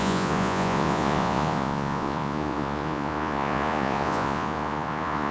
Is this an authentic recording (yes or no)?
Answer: no